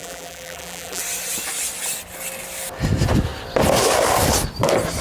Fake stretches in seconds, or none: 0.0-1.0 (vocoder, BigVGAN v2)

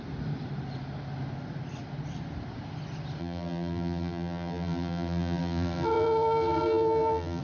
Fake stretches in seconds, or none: 3.2-7.4 (vocoder, BigVGAN v2)

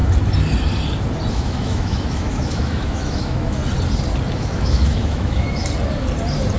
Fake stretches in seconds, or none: 1.3-3.6 (autoencoder, DAC-VAE); 4.3-5.6

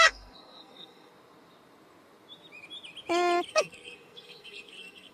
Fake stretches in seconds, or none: 0.0-1.1 (codec, SNAC); 3.5-5.1

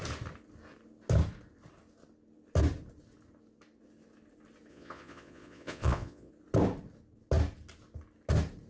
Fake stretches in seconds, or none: 4.7-6.3 (vocoder, Vocos)

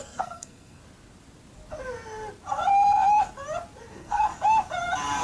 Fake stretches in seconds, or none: 0.0-0.8 (codec, SNAC); 3.9-4.3